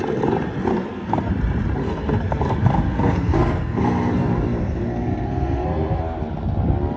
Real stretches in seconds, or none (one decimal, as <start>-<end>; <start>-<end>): 0.0-0.7; 1.3-1.8; 6.0-7.0